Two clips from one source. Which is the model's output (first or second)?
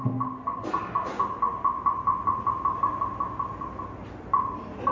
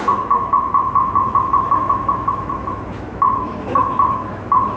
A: second